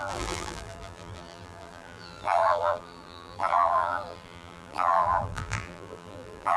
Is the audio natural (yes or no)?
no